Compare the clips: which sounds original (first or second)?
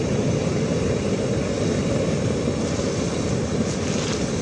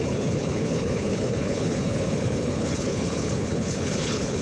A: first